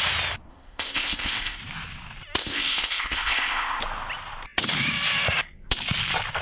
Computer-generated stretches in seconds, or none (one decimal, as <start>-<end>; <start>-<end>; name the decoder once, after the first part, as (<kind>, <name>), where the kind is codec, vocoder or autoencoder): 0.5-1.6 (codec, ZipCodec); 2.4-3.8